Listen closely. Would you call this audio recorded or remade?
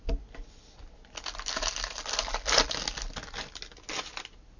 recorded